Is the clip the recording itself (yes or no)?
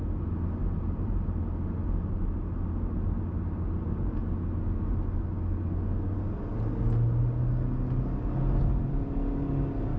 yes